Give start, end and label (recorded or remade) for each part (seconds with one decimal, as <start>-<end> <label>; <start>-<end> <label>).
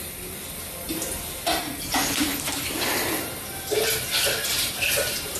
0.0-5.4 recorded